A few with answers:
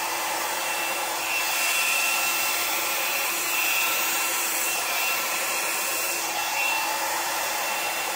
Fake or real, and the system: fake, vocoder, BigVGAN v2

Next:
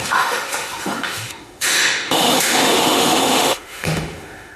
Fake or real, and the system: fake, autoencoder, DAC-VAE